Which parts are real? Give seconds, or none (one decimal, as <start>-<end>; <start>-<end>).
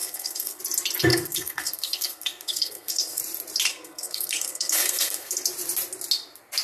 0.6-1.1; 3.2-3.7; 5.4-6.6